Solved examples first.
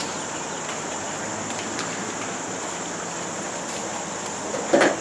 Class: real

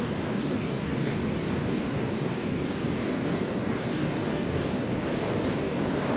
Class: fake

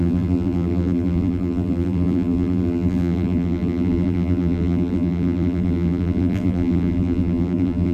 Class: fake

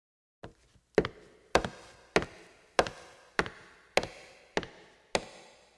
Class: real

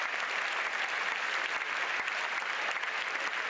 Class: real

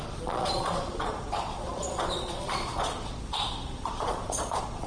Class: fake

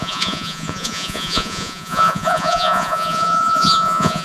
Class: fake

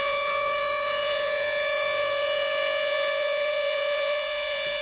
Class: fake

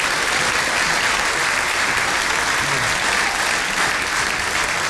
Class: real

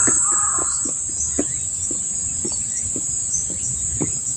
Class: real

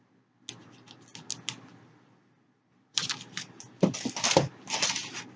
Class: real